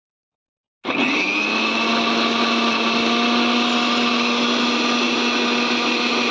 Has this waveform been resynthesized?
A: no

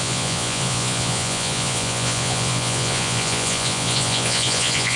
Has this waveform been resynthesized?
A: yes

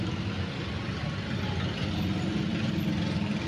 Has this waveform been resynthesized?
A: no